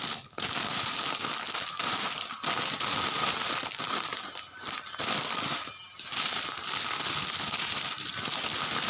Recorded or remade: recorded